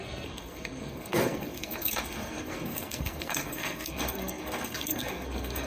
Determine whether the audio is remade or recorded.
remade